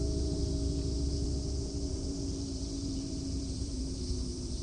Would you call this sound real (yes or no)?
no